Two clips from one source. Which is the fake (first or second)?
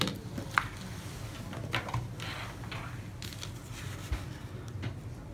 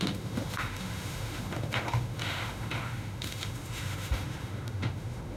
second